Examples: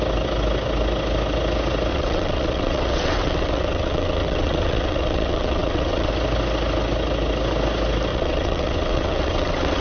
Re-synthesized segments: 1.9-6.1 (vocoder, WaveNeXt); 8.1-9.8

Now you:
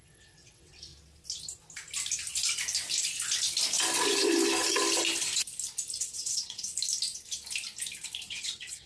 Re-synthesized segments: 0.0-0.9 (vocoder, WaveNeXt); 6.0-6.7; 8.3-8.9